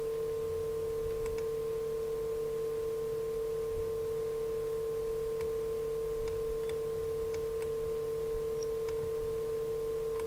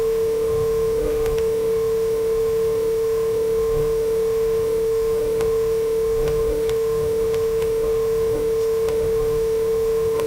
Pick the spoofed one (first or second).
second